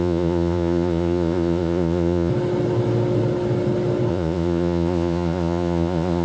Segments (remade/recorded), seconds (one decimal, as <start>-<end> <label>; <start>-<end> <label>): 0.0-2.3 remade; 2.3-4.1 recorded; 4.1-6.2 remade